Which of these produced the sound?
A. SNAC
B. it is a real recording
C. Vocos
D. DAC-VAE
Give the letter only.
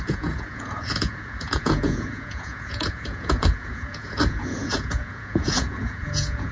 C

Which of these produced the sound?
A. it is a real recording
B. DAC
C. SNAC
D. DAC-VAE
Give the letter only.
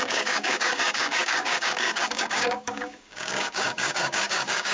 B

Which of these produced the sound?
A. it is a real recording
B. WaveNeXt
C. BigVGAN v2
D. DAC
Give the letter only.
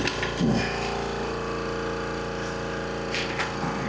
A